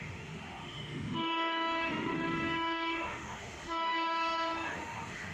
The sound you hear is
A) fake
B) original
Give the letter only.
A